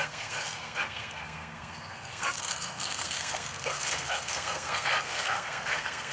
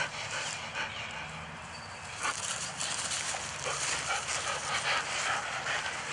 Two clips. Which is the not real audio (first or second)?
first